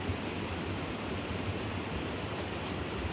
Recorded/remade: recorded